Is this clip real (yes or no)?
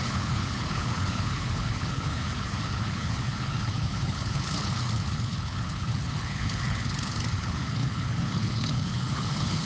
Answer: no